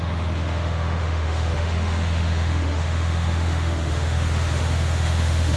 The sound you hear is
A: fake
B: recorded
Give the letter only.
A